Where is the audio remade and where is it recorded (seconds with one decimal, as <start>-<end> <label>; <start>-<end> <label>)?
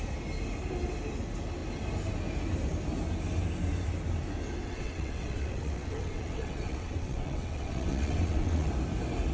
0.0-4.6 recorded; 4.6-8.7 remade; 8.7-9.3 recorded